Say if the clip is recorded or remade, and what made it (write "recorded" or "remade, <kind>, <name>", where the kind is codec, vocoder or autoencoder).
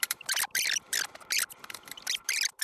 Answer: remade, vocoder, BigVGAN v2